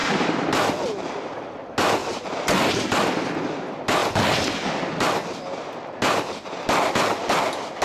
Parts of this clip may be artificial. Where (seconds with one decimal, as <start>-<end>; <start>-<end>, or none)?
0.0-1.1; 2.0-2.7